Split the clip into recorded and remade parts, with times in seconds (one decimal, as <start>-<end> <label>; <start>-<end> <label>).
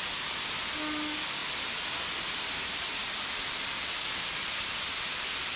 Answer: 0.0-5.6 recorded